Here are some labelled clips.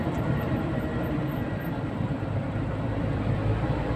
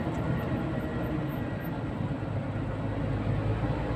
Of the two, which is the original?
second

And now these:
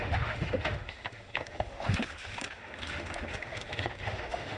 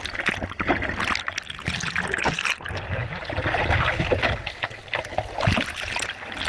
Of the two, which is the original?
second